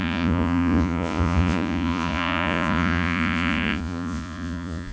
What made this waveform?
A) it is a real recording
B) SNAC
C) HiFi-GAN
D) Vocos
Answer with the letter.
D